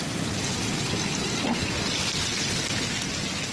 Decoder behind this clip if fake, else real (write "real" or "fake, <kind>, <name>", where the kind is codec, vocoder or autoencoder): real